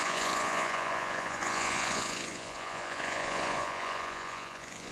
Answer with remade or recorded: remade